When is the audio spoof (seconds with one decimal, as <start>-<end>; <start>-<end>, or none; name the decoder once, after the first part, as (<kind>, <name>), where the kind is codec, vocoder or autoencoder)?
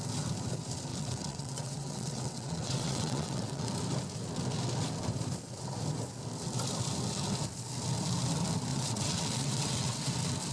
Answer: 0.9-3.7 (vocoder, WaveNeXt); 8.7-10.1